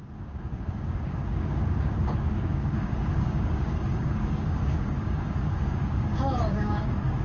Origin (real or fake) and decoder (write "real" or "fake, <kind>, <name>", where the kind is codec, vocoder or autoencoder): fake, codec, DAC